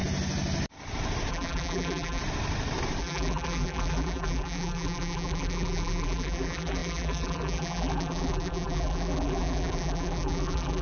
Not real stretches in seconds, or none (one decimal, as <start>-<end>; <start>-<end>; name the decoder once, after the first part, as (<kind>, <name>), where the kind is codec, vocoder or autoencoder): 1.3-2.2 (vocoder, BigVGAN v2); 3.0-10.8